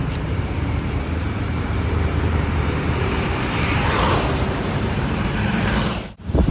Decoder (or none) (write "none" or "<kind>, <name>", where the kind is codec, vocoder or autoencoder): vocoder, BigVGAN v2